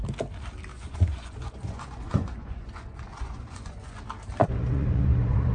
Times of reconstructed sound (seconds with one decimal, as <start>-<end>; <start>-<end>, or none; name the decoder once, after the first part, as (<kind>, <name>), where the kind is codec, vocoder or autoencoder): 0.7-4.0 (vocoder, Vocos); 4.4-5.5